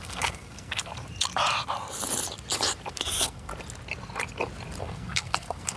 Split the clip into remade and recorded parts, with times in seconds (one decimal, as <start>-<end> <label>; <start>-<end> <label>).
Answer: 0.0-0.9 remade; 0.9-2.9 recorded; 2.9-3.5 remade; 3.5-4.8 recorded; 4.8-5.8 remade

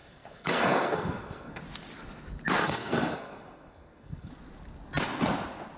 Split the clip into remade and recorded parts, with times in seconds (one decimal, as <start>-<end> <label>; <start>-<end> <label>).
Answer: 0.0-1.6 remade; 1.6-2.6 recorded; 2.6-4.3 remade; 4.3-5.8 recorded

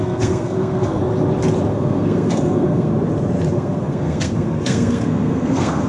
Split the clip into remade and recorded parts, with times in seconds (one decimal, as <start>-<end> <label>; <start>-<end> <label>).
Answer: 0.0-1.0 remade; 1.0-1.7 recorded; 1.7-2.9 remade; 2.9-3.5 recorded; 3.5-5.9 remade

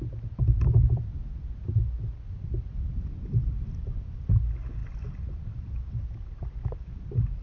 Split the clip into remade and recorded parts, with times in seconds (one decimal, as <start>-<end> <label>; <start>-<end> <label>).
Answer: 0.0-7.4 recorded

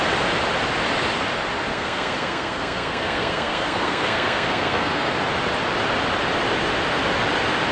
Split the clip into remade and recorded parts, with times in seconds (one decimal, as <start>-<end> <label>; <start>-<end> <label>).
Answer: 0.0-1.7 recorded; 1.7-5.1 remade; 5.1-7.7 recorded